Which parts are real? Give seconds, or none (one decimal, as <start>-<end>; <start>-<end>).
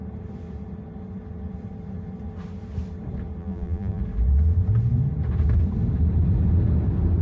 0.0-3.4; 4.0-7.2